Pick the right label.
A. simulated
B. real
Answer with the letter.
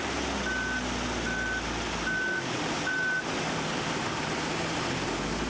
B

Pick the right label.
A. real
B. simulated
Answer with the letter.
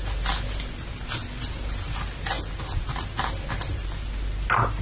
A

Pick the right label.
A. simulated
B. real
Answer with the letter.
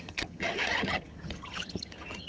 A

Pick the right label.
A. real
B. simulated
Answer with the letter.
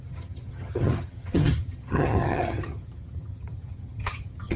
B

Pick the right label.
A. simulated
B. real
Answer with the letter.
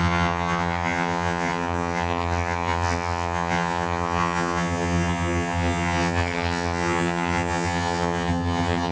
A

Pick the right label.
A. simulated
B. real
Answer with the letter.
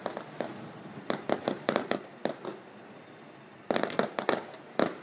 B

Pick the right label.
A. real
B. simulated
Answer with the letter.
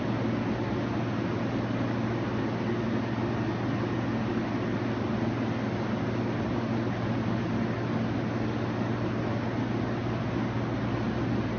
A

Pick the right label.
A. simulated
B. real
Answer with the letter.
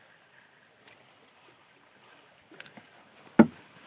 B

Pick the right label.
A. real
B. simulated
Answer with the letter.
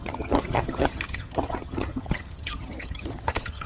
B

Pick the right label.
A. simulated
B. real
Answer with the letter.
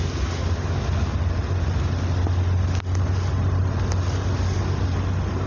B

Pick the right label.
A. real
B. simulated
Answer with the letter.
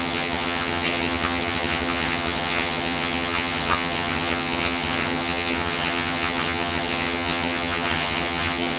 B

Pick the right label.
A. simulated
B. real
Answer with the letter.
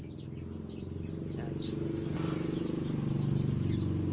B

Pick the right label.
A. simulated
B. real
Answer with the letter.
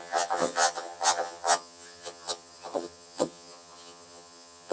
A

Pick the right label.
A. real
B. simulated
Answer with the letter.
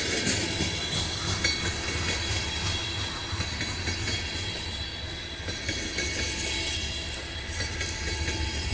A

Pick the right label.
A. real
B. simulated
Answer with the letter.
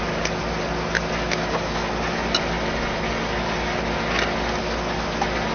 A